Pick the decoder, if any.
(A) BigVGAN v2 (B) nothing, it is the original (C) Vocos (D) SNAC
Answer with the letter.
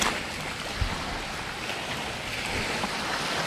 B